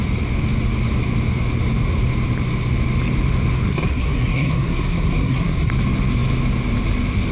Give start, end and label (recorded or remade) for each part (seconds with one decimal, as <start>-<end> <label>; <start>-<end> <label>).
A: 0.0-3.7 recorded; 3.7-5.7 remade; 5.7-7.3 recorded